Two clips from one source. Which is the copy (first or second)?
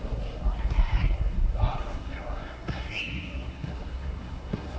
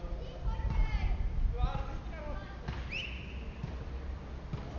first